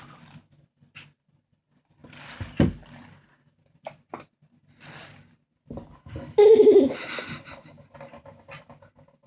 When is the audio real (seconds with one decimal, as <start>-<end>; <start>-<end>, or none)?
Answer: 0.0-9.3